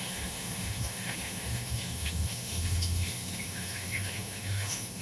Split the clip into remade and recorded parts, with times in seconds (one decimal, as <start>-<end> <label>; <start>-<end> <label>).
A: 0.0-5.0 remade